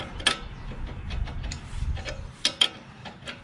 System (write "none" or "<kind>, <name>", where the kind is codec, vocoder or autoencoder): none